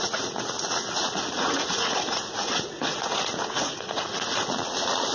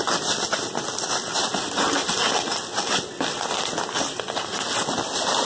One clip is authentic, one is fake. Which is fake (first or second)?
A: first